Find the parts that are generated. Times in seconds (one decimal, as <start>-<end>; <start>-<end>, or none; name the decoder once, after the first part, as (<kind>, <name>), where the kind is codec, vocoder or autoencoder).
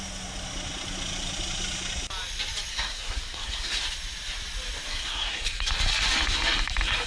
2.7-3.8 (codec, SNAC); 4.9-5.5